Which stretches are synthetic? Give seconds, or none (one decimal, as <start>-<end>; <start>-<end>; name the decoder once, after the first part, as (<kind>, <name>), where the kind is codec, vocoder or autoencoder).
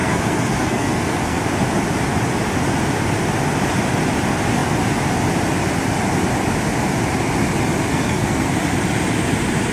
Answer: 0.0-1.4 (codec, SNAC); 7.9-8.5